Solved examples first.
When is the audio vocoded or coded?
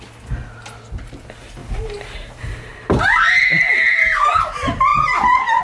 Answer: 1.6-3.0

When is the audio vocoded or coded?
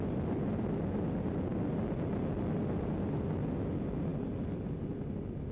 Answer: none